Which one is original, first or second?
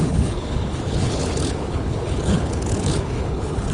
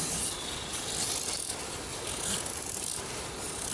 second